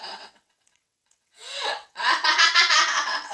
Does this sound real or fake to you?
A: fake